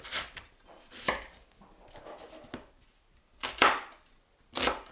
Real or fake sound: real